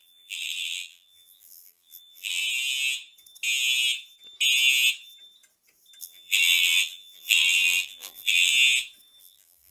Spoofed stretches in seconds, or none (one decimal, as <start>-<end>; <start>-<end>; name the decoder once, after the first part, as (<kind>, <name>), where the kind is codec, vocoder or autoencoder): 0.0-2.4 (vocoder, BigVGAN v2); 6.0-8.5; 9.2-9.7